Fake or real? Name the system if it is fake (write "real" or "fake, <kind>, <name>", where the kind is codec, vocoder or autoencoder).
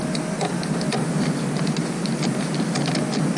real